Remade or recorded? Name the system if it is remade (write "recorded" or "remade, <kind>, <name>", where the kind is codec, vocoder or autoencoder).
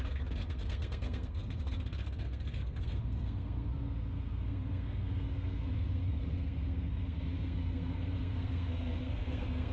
remade, codec, SNAC